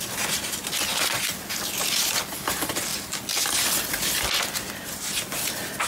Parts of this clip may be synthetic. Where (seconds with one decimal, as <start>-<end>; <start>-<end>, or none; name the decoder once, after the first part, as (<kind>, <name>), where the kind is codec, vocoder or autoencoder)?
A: none